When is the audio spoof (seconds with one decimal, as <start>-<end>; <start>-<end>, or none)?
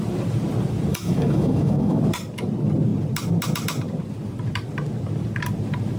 0.9-2.0